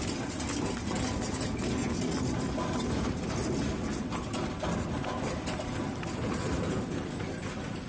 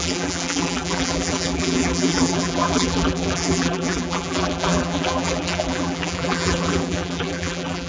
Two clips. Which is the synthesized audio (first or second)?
second